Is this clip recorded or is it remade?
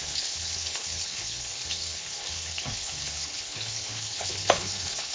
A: remade